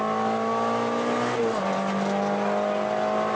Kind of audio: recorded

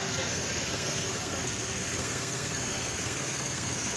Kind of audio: remade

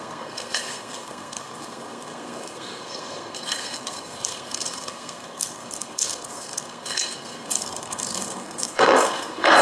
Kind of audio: remade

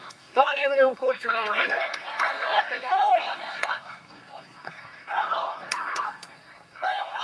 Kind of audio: remade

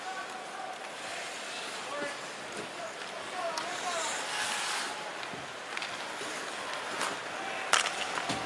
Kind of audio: recorded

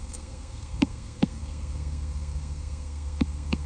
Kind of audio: remade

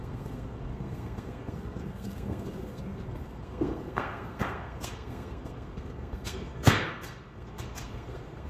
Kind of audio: remade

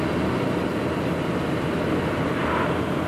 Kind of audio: recorded